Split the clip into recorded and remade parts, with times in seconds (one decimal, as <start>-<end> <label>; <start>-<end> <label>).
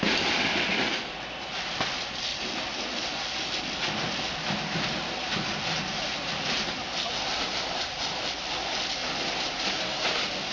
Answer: 0.0-9.0 recorded; 9.0-10.0 remade; 10.0-10.5 recorded